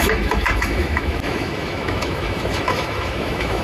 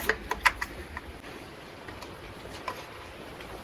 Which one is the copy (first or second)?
first